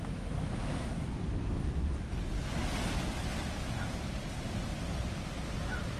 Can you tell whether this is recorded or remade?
recorded